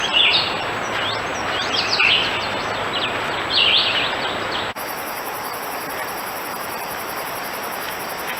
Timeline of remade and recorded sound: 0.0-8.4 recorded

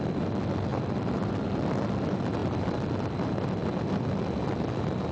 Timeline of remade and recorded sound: 0.0-0.7 recorded; 0.7-1.3 remade; 1.3-2.4 recorded; 2.4-2.9 remade; 2.9-5.1 recorded

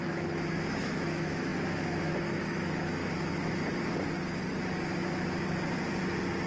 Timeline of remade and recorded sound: 0.0-3.0 remade; 3.0-6.5 recorded

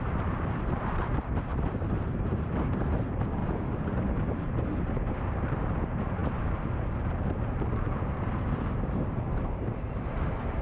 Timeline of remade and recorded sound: 0.0-3.4 remade; 3.4-4.2 recorded; 4.2-10.6 remade

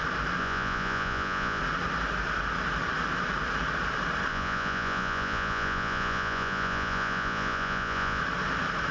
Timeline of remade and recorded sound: 0.0-0.4 recorded; 0.4-1.6 remade; 1.6-4.3 recorded; 4.3-8.2 remade; 8.2-8.9 recorded

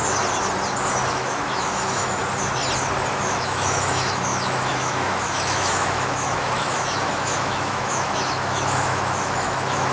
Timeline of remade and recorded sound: 0.0-1.1 recorded; 1.1-2.2 remade; 2.2-3.1 recorded; 3.1-9.9 remade

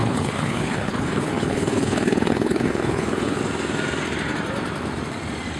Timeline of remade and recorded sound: 0.0-3.4 remade; 3.4-5.6 recorded

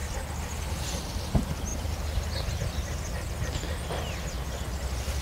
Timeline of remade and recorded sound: 0.0-5.2 recorded